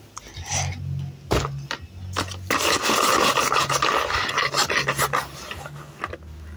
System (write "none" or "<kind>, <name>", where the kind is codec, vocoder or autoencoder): none